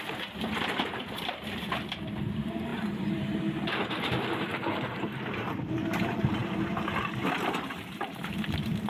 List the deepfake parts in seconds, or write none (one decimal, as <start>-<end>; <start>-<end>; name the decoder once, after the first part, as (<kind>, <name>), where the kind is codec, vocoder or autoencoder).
0.0-8.9 (vocoder, BigVGAN v2)